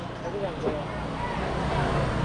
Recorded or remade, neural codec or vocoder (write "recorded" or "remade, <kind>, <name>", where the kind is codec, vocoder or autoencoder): recorded